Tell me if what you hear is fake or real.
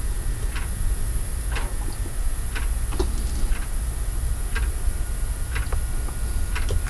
real